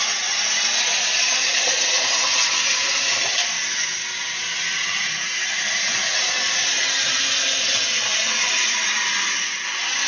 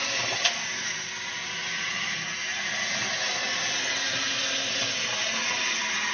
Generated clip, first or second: first